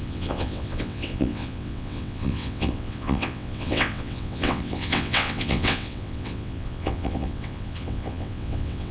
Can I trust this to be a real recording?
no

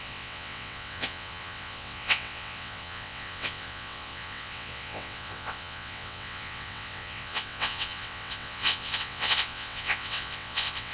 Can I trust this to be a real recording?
no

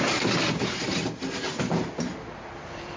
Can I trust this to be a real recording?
yes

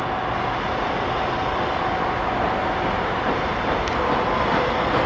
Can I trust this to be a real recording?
yes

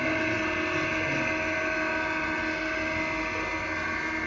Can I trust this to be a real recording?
yes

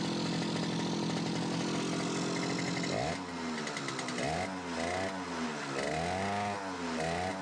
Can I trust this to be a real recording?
yes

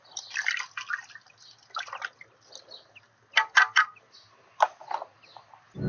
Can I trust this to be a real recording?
yes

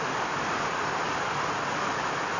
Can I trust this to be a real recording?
yes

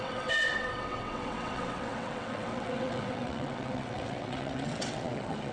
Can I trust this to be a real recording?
no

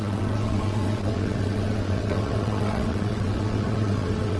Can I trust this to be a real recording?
no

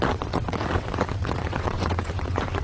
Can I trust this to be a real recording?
no